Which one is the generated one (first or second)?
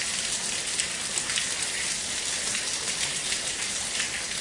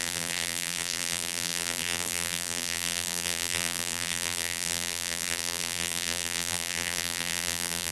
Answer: second